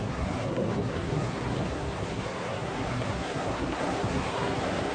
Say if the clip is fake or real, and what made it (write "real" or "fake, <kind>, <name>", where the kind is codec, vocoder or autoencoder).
fake, codec, SNAC